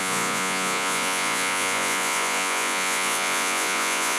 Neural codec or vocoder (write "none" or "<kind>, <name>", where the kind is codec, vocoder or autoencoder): vocoder, Vocos